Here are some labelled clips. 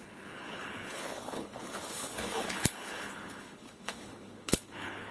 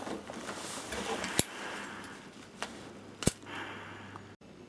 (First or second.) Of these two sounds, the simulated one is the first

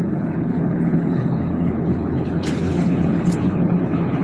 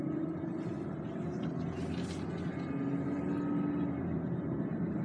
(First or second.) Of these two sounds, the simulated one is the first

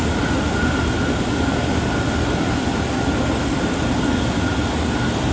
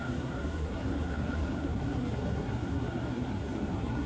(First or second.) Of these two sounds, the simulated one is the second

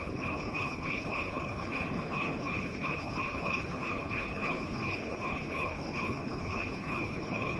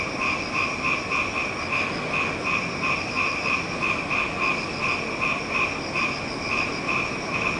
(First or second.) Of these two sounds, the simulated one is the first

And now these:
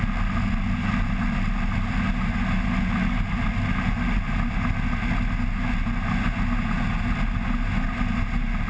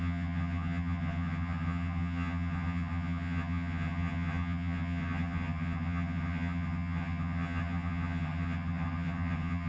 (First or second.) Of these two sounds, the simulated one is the second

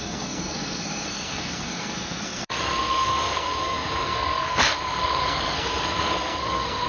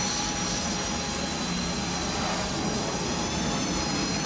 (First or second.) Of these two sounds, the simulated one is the first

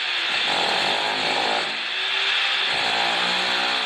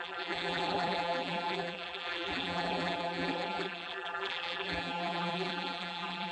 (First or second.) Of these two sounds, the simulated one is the second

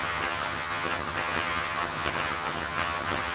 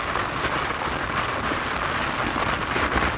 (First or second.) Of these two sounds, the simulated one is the first